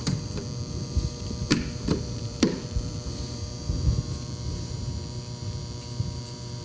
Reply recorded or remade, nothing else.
remade